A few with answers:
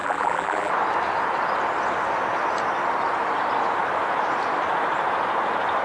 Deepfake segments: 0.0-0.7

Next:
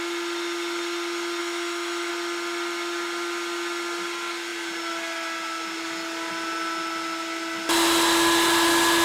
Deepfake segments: 1.4-2.1

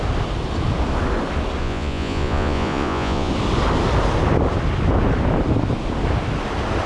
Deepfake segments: 1.6-3.3

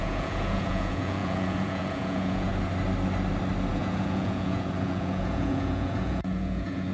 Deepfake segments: 0.0-2.5; 3.7-6.9